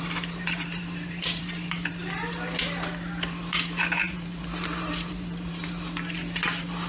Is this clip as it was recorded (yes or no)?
no